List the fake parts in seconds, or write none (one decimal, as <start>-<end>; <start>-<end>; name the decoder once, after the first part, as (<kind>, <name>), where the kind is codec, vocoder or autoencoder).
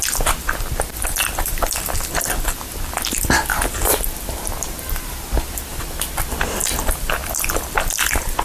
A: 0.9-1.5 (vocoder, BigVGAN v2); 7.2-8.4